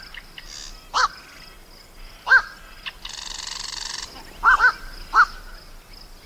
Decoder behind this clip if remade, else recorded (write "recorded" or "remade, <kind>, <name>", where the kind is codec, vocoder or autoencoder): recorded